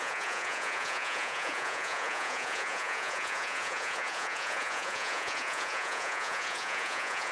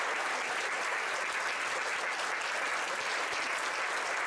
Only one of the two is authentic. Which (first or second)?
second